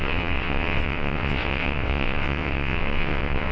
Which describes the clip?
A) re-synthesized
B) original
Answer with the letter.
A